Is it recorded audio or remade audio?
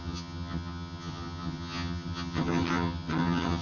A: remade